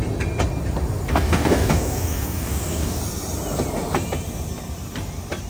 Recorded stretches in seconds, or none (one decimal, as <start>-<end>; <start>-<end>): 0.0-1.1; 3.0-5.5

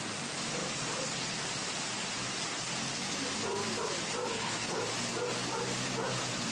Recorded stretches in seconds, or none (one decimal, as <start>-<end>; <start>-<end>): 0.0-4.3; 4.8-6.5

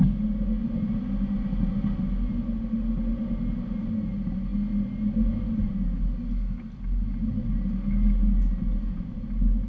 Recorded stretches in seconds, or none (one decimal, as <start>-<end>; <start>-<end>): 0.0-9.7

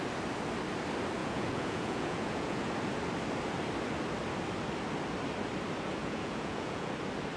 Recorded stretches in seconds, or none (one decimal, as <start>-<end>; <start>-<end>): 0.0-1.2; 2.7-6.0; 6.9-7.4

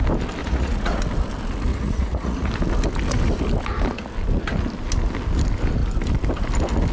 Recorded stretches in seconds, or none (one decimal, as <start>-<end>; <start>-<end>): 0.0-0.4; 1.0-1.7; 2.5-6.9

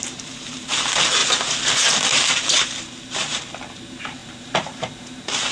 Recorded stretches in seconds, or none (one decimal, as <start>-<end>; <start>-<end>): 1.2-2.1

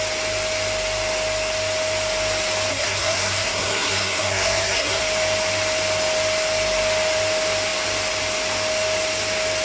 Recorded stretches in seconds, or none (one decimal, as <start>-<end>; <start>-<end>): 0.0-2.7; 5.0-9.6

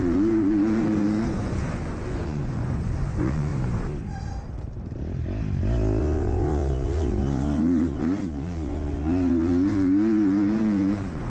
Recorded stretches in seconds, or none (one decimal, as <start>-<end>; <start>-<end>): 3.5-6.0